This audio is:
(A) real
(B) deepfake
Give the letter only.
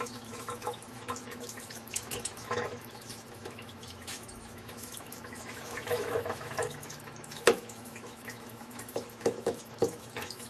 B